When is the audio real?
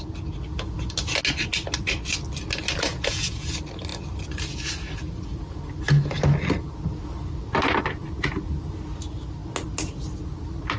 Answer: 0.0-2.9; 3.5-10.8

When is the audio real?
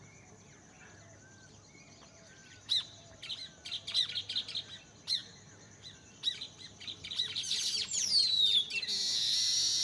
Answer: 0.0-2.4; 3.1-5.2; 8.4-9.8